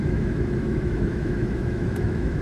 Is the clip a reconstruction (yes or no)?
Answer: yes